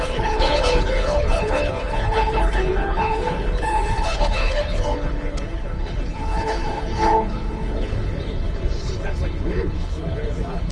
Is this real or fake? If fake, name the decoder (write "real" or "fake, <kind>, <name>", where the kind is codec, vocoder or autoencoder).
fake, codec, HILCodec